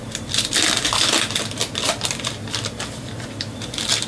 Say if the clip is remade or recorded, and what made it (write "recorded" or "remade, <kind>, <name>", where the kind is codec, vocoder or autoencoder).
recorded